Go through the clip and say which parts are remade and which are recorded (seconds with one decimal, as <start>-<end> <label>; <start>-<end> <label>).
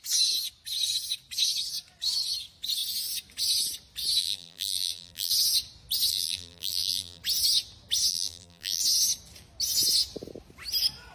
0.0-4.2 recorded; 4.2-5.3 remade; 5.3-6.1 recorded; 6.1-7.2 remade; 7.2-8.1 recorded; 8.1-8.8 remade; 8.8-11.1 recorded